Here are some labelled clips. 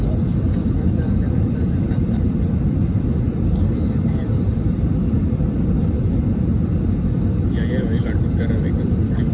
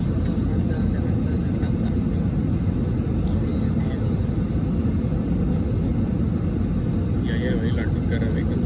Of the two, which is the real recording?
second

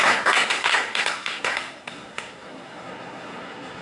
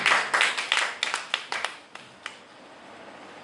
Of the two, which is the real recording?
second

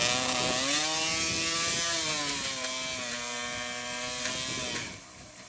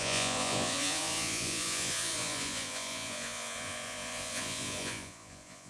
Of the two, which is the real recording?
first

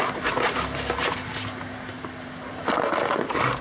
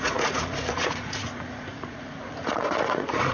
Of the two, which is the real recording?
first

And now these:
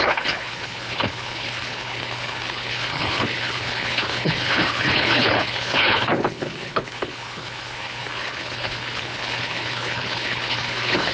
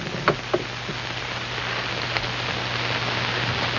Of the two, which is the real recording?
second